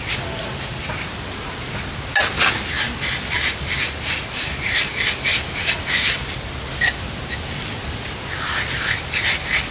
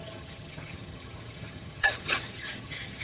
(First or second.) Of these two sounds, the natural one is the first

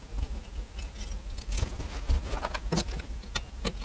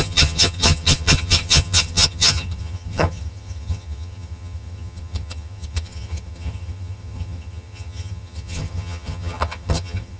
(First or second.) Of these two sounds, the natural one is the first